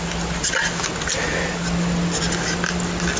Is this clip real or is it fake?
real